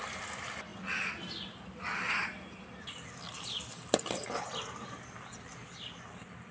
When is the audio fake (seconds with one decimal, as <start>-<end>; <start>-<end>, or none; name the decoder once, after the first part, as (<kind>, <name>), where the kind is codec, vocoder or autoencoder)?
none